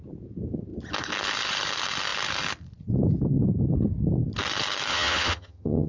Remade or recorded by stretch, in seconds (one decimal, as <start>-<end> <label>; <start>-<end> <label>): 0.0-4.9 recorded; 4.9-5.9 remade